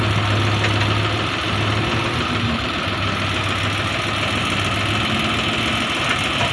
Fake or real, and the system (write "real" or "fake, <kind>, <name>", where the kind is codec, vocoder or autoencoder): real